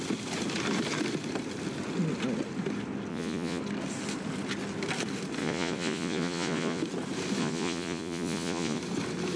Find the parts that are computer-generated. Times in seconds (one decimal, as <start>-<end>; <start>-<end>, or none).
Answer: 3.1-3.6; 5.4-6.8; 7.4-8.8